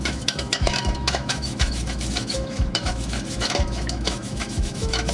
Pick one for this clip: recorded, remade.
remade